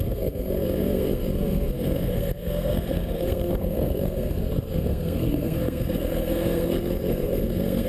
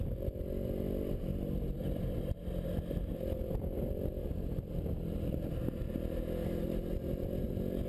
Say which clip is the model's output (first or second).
first